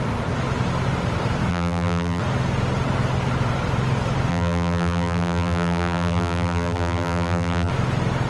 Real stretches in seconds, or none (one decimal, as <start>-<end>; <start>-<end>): 0.0-1.5; 2.2-4.3; 7.7-8.3